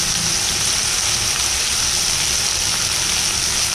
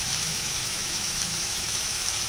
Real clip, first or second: first